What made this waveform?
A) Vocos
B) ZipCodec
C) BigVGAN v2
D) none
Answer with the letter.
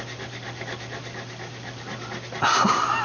D